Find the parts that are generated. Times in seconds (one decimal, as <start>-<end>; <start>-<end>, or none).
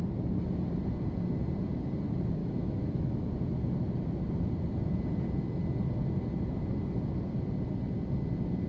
2.4-3.3